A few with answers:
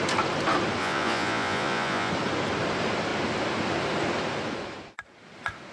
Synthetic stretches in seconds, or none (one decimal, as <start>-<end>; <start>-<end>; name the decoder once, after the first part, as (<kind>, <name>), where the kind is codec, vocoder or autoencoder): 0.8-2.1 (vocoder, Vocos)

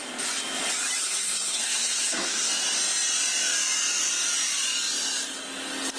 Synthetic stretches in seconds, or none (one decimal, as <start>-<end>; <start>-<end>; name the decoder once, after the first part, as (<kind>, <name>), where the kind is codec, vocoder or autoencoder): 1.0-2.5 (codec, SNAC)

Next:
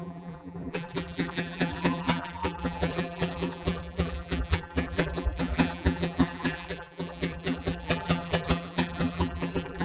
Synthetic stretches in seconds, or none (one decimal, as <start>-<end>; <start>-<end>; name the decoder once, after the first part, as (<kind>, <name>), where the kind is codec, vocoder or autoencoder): 0.0-9.8 (vocoder, BigVGAN v2)

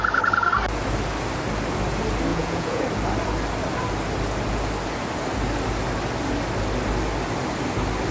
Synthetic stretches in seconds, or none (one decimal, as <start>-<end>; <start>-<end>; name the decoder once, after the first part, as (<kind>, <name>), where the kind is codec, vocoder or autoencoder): 2.3-2.8 (vocoder, Vocos)

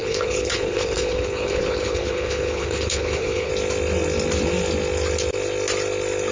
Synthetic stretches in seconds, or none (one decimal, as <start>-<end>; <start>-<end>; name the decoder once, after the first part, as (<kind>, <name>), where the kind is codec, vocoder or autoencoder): 0.0-3.5 (codec, HILCodec)

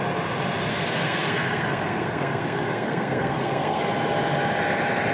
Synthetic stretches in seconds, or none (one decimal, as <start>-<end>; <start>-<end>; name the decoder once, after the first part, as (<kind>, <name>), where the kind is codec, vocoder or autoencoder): 0.7-3.8 (codec, SNAC)

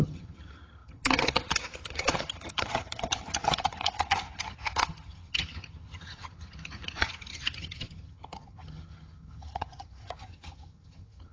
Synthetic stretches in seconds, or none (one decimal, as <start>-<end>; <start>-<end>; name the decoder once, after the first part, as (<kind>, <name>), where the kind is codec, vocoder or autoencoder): 0.0-11.3 (vocoder, HiFi-GAN)